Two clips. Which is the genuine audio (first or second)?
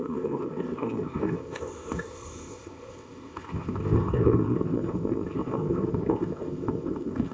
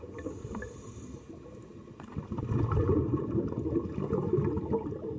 second